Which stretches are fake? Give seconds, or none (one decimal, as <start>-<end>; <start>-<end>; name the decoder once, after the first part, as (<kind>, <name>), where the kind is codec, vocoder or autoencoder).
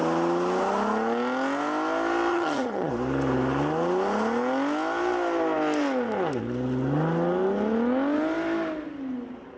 2.3-2.9 (vocoder, HiFi-GAN)